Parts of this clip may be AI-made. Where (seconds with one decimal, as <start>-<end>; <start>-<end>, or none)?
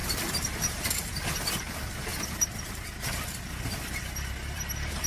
0.0-2.1; 4.0-5.1